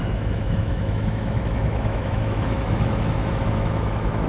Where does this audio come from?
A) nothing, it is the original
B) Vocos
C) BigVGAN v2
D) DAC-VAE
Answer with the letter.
D